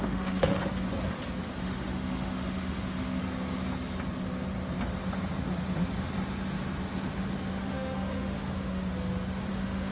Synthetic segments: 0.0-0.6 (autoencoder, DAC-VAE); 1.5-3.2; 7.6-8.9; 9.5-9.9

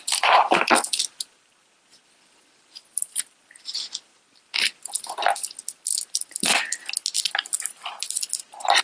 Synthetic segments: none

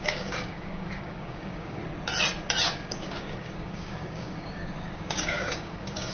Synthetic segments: 0.0-1.8 (codec, DAC); 2.6-6.1